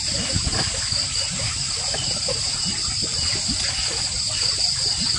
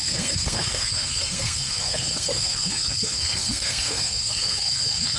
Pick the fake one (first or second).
second